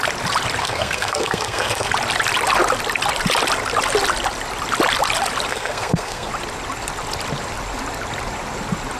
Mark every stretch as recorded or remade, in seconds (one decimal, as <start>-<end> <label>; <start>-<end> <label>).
0.0-0.6 recorded; 0.6-1.9 remade; 1.9-5.5 recorded; 5.5-6.3 remade; 6.3-9.0 recorded